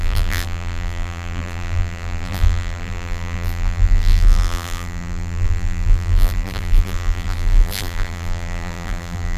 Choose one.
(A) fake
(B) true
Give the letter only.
A